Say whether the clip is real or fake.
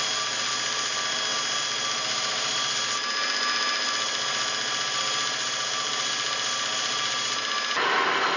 real